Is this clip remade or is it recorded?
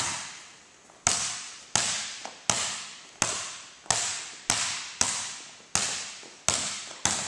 recorded